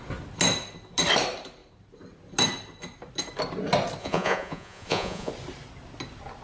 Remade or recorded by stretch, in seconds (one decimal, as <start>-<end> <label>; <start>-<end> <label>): 0.0-4.0 recorded; 4.0-5.3 remade; 5.3-6.4 recorded